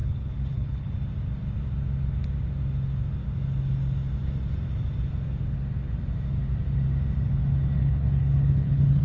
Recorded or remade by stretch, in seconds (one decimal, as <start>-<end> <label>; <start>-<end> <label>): 0.0-0.9 remade; 0.9-7.8 recorded; 7.8-9.0 remade